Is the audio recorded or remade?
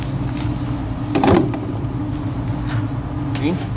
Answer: recorded